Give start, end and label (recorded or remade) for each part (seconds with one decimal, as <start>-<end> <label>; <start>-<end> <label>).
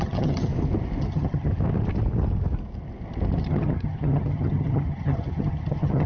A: 0.0-0.5 remade; 0.5-1.0 recorded; 1.0-1.5 remade; 1.5-3.4 recorded; 3.4-6.1 remade